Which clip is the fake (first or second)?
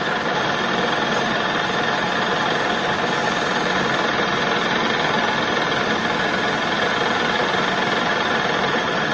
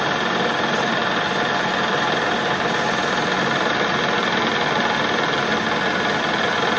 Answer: first